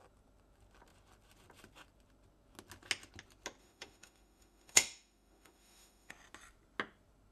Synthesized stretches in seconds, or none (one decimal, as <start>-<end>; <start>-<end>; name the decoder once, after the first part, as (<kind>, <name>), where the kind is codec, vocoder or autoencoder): 3.6-6.1 (autoencoder, DAC-VAE)